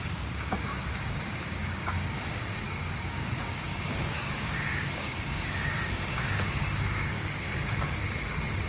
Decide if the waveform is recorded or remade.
remade